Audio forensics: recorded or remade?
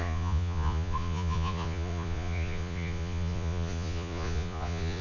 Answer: remade